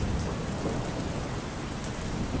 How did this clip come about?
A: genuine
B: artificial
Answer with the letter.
A